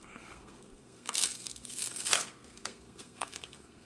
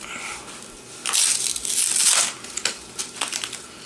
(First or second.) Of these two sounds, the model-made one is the first